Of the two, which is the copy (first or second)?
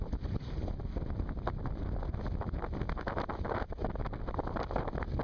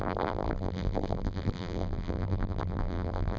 second